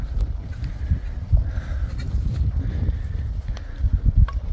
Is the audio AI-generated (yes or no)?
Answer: no